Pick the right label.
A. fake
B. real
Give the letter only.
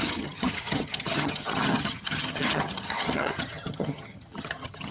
A